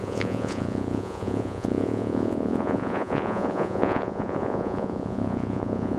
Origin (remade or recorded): remade